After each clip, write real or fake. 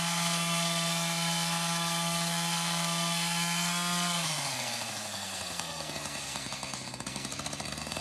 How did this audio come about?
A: fake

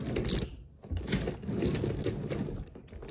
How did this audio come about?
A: real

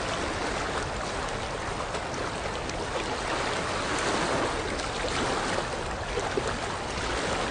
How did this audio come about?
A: real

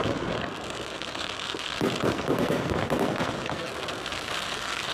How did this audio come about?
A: fake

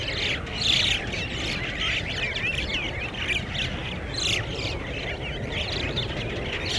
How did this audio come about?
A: real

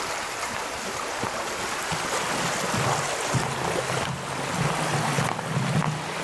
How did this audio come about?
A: real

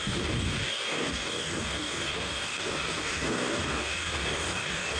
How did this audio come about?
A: fake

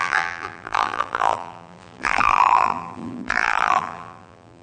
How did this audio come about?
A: fake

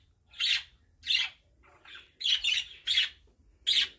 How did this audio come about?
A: real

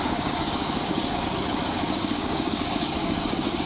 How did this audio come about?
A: fake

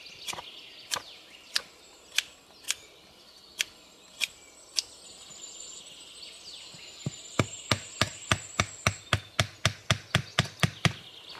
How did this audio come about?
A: real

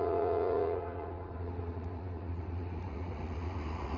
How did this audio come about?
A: fake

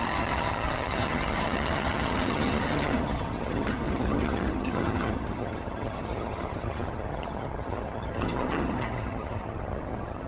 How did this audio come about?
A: fake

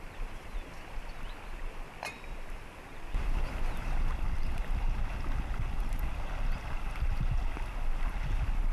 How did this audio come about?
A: real